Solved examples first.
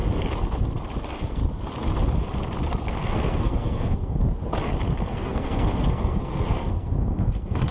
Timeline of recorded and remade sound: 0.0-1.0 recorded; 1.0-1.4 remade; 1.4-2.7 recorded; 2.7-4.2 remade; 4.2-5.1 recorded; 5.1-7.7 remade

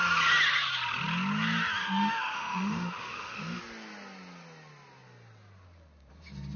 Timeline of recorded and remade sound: 0.0-1.8 recorded; 1.8-3.6 remade; 3.6-6.6 recorded

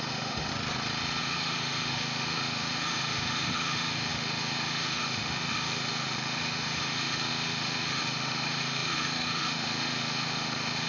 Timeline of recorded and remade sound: 0.0-0.5 remade; 0.5-1.2 recorded; 1.2-10.9 remade

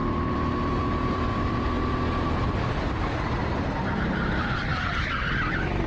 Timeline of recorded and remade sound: 0.0-5.9 remade